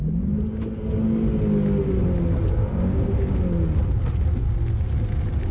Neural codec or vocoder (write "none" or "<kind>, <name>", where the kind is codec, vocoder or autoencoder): none